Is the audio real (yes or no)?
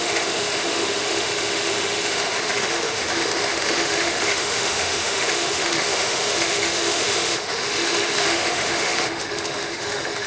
no